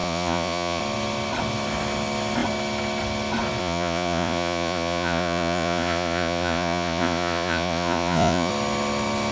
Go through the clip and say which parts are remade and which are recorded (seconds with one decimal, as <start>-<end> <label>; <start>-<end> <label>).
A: 0.0-0.8 remade; 0.8-3.6 recorded; 3.6-8.5 remade; 8.5-9.3 recorded